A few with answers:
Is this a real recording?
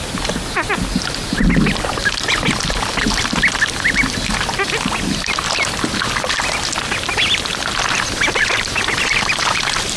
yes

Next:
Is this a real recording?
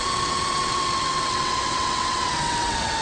no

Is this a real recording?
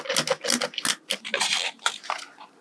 yes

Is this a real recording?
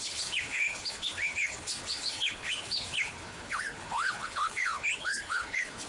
no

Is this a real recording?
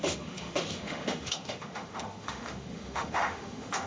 no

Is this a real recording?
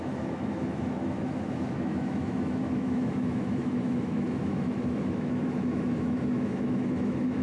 no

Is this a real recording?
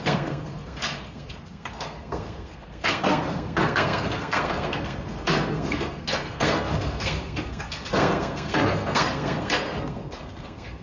no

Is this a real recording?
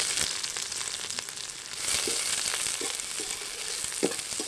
yes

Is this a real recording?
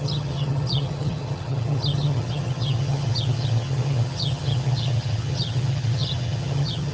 no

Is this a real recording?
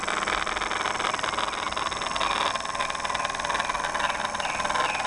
yes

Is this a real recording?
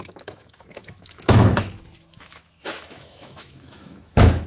no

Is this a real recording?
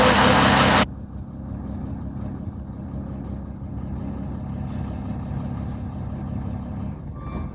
yes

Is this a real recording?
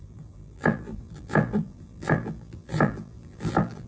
no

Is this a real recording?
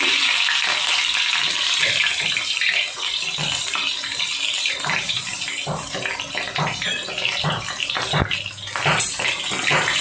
yes